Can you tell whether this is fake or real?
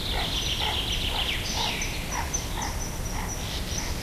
real